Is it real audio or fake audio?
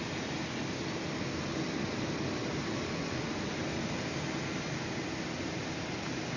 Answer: real